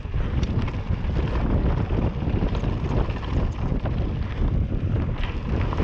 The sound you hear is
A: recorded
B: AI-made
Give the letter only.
A